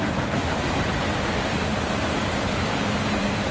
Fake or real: real